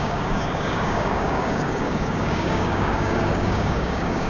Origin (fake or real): fake